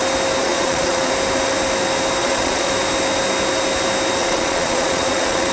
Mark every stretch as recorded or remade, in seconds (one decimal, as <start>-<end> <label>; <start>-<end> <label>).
0.0-0.4 recorded; 0.4-1.1 remade; 1.1-2.2 recorded; 2.2-2.7 remade; 2.7-4.2 recorded; 4.2-5.5 remade